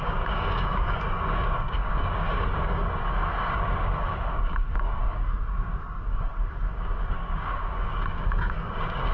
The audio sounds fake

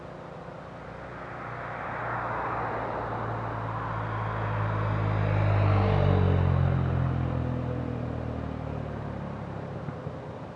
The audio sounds real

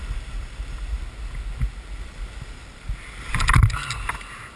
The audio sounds real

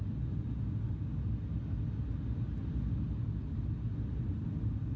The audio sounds real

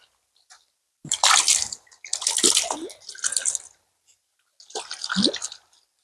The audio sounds real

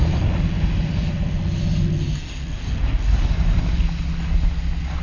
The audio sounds real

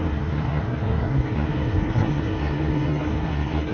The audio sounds fake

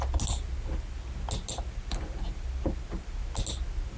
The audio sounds real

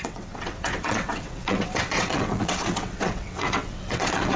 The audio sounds fake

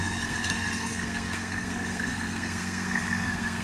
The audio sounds fake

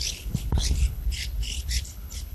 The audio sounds fake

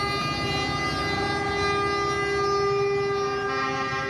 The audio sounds real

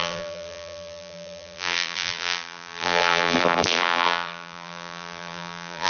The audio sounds fake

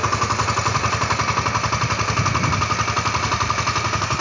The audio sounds real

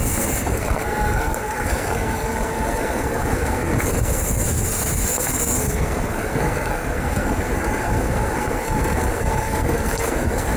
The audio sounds fake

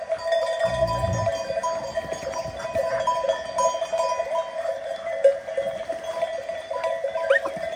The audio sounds real